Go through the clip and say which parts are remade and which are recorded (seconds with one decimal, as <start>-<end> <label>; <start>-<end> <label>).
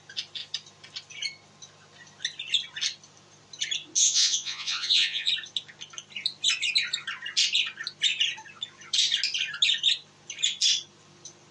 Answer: 0.0-4.0 recorded; 4.0-5.3 remade; 5.3-11.5 recorded